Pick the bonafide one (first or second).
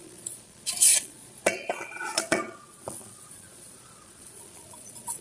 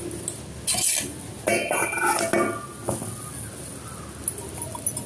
second